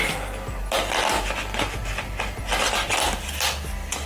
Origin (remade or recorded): recorded